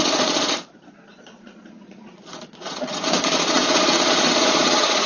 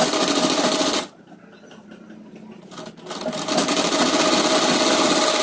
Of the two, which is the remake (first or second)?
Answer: first